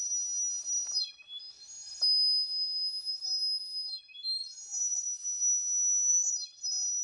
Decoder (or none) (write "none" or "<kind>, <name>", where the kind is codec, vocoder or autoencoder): none